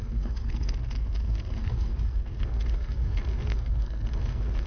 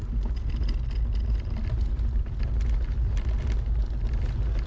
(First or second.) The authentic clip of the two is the second